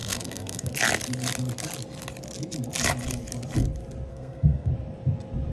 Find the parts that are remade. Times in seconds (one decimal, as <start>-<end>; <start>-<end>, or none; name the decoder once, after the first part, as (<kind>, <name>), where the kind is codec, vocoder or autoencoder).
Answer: 0.0-0.7 (codec, SNAC); 4.1-4.7